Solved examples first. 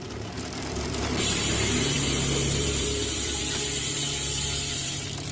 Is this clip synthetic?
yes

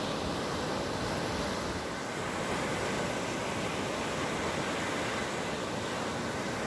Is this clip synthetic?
no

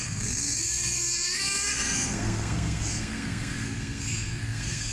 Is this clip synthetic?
yes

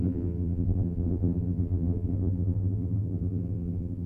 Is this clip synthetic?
yes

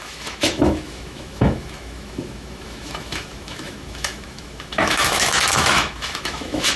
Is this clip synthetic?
yes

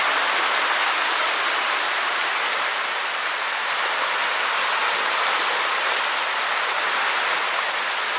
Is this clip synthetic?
no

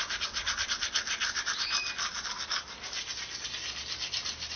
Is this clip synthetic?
no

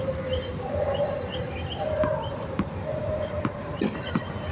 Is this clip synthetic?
no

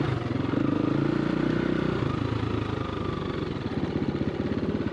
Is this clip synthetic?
no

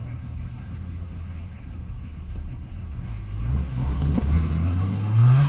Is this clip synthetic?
yes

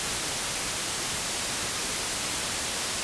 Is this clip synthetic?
no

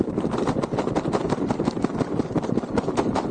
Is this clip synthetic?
no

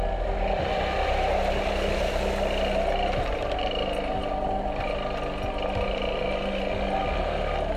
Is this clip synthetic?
no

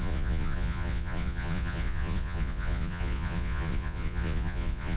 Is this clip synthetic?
yes